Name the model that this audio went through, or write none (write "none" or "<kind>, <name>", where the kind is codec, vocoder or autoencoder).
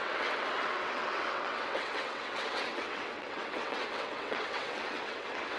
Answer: vocoder, WaveNeXt